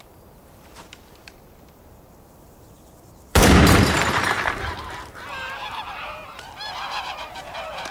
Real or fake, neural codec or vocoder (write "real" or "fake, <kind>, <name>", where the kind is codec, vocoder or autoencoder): fake, vocoder, BigVGAN v2